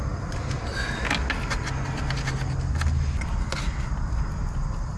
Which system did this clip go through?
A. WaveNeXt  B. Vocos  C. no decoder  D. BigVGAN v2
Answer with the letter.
C